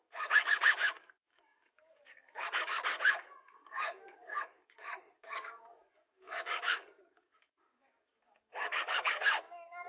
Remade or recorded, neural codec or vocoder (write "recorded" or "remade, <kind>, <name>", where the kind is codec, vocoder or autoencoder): remade, codec, DAC